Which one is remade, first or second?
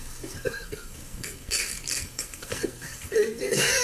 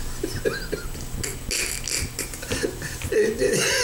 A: first